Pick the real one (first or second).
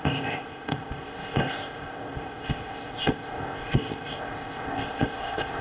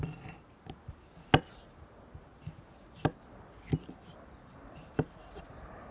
second